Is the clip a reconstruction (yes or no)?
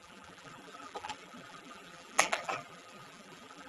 yes